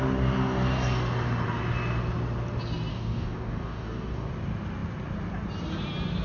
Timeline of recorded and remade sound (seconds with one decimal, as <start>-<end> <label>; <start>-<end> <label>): 0.0-2.9 recorded; 2.9-4.3 remade; 4.3-6.2 recorded